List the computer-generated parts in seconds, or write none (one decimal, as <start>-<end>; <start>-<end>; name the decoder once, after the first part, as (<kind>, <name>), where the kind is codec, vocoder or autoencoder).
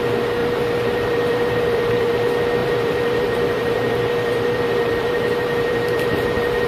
0.4-2.1 (vocoder, BigVGAN v2); 2.6-6.7